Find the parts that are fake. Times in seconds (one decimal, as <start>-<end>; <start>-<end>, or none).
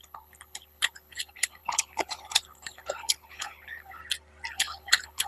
0.0-4.0; 4.5-5.3